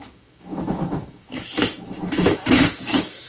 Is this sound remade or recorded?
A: remade